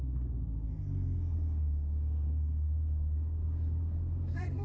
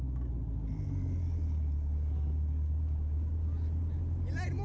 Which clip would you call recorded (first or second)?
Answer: second